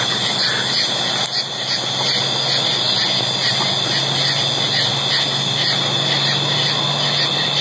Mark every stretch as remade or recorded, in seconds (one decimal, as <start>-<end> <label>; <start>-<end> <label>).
0.0-7.6 recorded